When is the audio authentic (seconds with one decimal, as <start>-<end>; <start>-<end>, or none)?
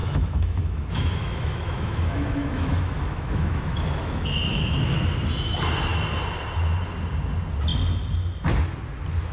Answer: 5.0-9.3